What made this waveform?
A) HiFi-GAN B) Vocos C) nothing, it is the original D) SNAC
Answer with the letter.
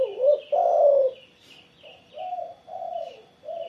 C